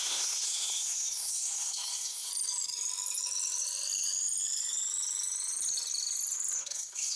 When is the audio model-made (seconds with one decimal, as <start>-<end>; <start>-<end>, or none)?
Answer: 0.0-2.3; 6.6-7.2